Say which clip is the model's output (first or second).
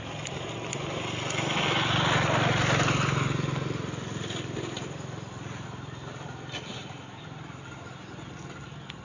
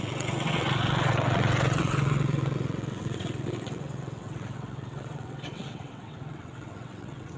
second